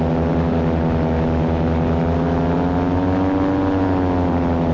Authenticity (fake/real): real